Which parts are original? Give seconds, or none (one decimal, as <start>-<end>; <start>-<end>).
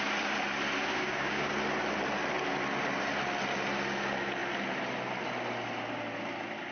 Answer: 0.0-0.9; 1.5-6.7